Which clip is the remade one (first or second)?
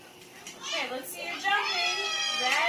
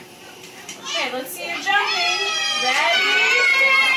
second